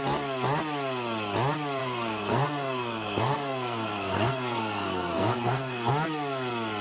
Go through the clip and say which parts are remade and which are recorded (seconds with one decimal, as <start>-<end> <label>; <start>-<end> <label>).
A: 0.0-1.8 recorded; 1.8-5.9 remade; 5.9-6.8 recorded